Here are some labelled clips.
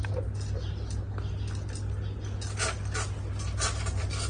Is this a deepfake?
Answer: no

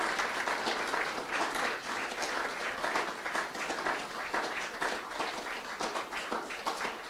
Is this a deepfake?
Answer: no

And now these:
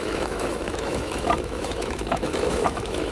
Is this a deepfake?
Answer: yes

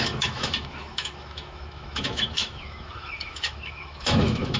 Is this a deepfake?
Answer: yes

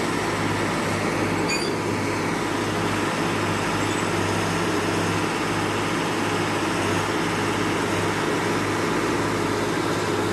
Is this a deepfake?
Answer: no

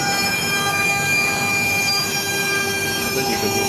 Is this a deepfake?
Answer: yes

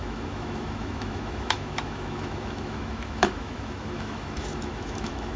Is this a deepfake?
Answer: yes